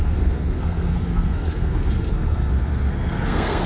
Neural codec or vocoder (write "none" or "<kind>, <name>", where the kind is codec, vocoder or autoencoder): codec, SNAC